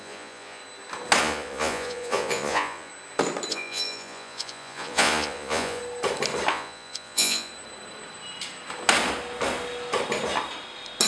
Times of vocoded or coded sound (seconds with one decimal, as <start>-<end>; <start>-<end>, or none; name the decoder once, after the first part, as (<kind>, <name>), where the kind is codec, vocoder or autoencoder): 0.0-0.6 (vocoder, Vocos); 1.2-2.9; 3.5-5.8; 6.5-7.5